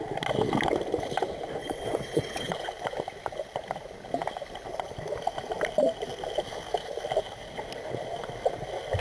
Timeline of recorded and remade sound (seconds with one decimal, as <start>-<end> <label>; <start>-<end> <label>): 0.0-1.6 recorded; 1.6-2.5 remade; 2.5-9.0 recorded